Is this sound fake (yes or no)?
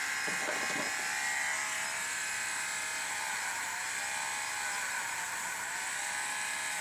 no